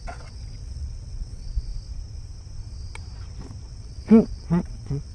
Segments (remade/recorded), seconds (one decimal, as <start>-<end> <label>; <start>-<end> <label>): 0.0-1.7 remade; 1.7-3.7 recorded; 3.7-5.1 remade